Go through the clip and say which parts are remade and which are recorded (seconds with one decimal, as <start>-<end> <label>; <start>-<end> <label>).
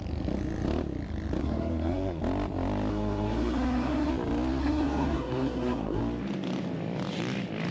0.0-1.4 recorded; 1.4-2.2 remade; 2.2-2.9 recorded; 2.9-4.1 remade; 4.1-4.6 recorded; 4.6-6.0 remade; 6.0-7.7 recorded